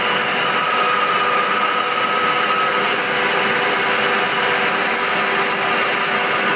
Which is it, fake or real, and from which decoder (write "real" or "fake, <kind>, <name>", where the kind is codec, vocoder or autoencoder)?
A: real